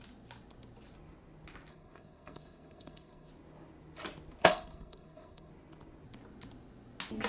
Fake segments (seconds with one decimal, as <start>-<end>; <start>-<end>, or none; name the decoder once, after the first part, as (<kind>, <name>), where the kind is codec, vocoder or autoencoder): 1.7-3.3 (codec, SNAC); 4.4-5.5